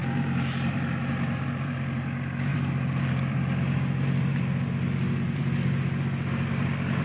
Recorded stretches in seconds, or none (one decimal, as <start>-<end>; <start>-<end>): none